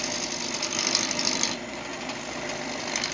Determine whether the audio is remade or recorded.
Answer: recorded